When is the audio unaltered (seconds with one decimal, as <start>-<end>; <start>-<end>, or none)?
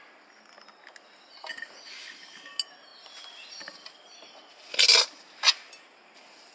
0.0-1.9; 2.5-6.5